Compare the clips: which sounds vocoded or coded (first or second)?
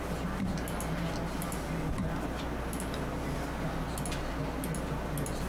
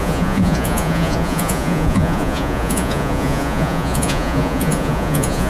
second